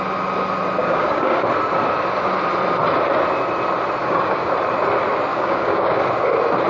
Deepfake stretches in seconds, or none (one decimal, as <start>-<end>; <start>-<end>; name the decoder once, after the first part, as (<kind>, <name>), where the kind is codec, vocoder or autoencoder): 0.8-1.4 (codec, DAC); 4.0-4.5; 5.3-6.0